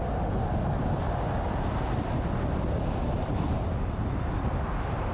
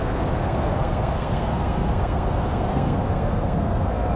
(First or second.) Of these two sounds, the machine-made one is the second